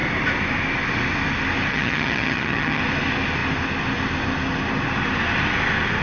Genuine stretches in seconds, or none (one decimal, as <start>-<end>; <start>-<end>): 0.0-1.7; 2.8-6.0